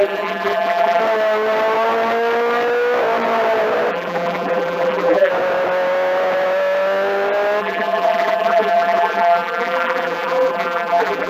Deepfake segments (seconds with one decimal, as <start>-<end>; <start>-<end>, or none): 0.0-1.0; 3.9-5.3; 7.6-11.3